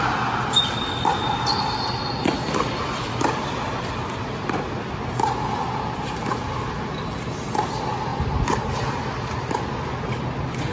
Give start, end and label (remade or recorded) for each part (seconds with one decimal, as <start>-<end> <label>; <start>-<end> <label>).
0.0-10.7 recorded